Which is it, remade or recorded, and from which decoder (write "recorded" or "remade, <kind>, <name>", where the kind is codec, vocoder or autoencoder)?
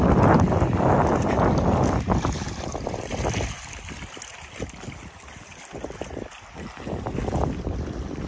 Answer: recorded